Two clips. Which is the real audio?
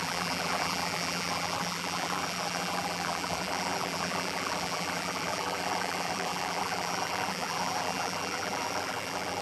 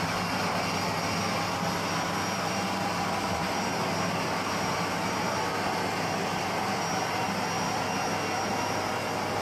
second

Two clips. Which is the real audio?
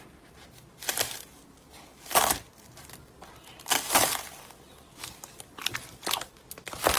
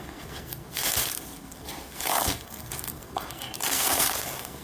first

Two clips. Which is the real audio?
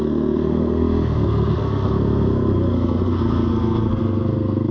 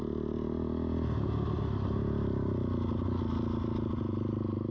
second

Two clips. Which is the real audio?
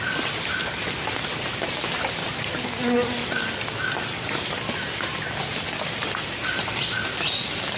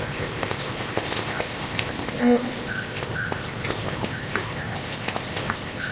first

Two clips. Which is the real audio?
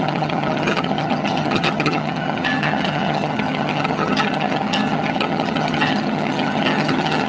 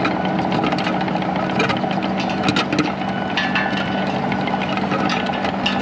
second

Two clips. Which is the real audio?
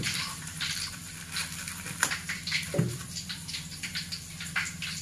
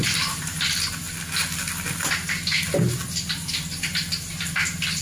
second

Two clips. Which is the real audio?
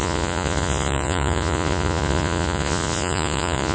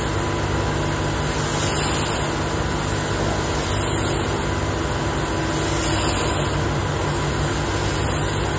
second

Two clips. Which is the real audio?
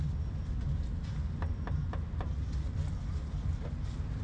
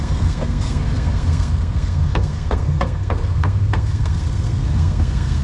first